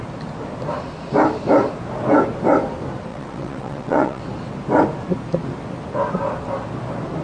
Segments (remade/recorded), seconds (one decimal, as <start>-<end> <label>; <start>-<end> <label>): 0.0-3.1 recorded; 3.1-4.2 remade; 4.2-7.2 recorded